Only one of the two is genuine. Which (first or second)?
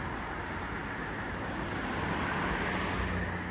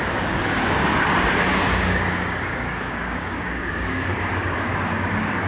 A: first